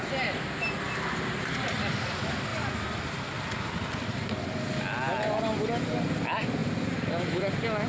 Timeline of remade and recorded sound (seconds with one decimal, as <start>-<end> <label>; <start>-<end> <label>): 0.0-7.9 recorded